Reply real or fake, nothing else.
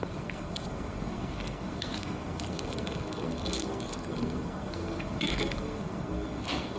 fake